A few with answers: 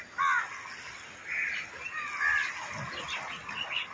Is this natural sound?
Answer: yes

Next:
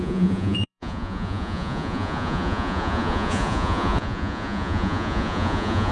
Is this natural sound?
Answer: no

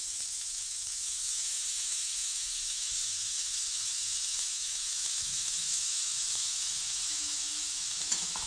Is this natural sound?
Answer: no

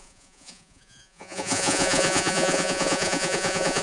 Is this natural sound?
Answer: no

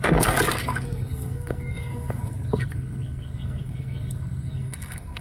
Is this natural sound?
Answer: no